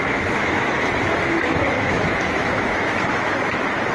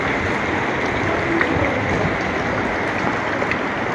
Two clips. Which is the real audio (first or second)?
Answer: second